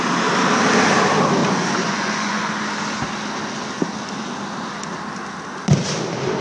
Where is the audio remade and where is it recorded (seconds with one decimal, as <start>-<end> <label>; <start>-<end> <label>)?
0.0-1.4 recorded; 1.4-2.5 remade; 2.5-6.4 recorded